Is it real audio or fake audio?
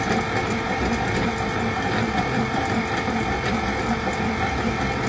real